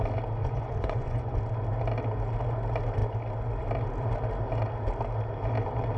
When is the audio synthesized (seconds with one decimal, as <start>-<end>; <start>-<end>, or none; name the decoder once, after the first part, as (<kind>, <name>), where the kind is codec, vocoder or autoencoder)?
0.4-1.4 (vocoder, Vocos)